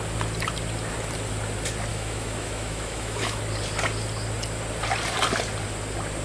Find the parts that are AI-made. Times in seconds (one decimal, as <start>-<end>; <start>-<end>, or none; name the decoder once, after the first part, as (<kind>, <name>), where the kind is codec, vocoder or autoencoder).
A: 1.9-3.4 (autoencoder, DAC-VAE)